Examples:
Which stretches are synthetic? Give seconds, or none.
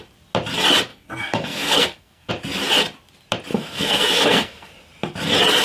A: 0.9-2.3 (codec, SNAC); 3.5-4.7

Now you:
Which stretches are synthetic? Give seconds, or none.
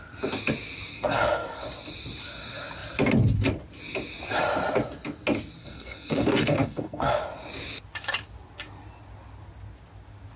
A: 0.9-1.6 (codec, SNAC); 5.6-7.2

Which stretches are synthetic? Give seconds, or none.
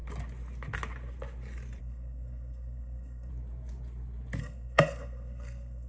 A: 1.8-3.3 (codec, SNAC); 4.4-5.9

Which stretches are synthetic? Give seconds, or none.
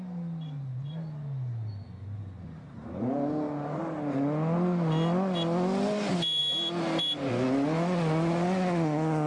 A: none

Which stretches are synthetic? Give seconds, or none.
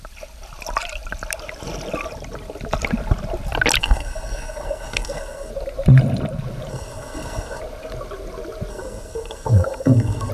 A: 3.8-5.5 (codec, SNAC); 6.7-7.6; 8.7-10.3